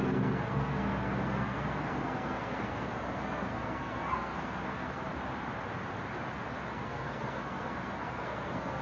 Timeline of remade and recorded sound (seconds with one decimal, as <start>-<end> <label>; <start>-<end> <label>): 0.0-5.1 remade; 5.1-6.7 recorded; 6.7-8.8 remade